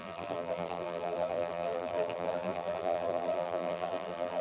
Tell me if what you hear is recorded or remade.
remade